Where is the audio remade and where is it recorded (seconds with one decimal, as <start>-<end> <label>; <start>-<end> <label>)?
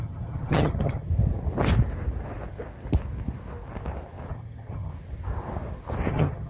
0.0-1.1 remade; 1.1-4.3 recorded; 4.3-4.9 remade; 4.9-6.1 recorded; 6.1-6.5 remade